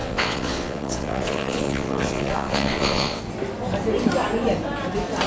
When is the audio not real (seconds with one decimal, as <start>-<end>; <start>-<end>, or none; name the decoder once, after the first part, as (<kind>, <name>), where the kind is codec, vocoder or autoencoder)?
0.0-3.2 (vocoder, WaveNeXt)